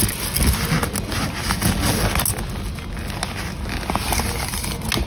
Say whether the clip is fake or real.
real